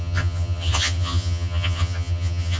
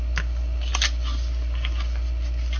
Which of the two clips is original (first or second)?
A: second